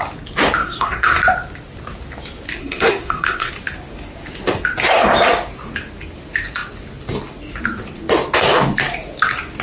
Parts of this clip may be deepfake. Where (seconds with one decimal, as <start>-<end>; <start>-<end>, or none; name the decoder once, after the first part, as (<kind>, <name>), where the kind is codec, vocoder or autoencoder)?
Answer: 0.6-1.2 (codec, SNAC); 2.6-3.5